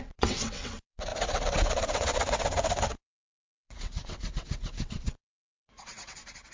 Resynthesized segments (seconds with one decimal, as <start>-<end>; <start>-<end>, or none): 0.0-6.5